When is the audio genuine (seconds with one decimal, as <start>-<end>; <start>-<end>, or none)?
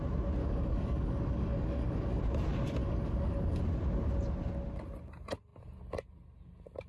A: 0.0-0.4; 2.2-2.8; 3.6-6.9